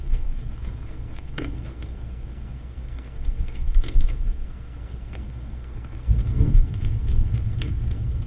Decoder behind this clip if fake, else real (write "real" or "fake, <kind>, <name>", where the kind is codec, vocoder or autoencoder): fake, codec, SNAC